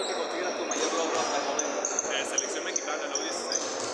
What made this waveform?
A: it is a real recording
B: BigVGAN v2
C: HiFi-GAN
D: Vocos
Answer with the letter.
A